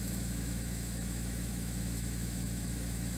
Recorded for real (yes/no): no